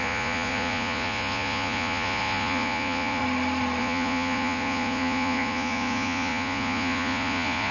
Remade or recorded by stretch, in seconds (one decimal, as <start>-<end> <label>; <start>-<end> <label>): 0.0-3.2 remade; 3.2-3.8 recorded; 3.8-7.7 remade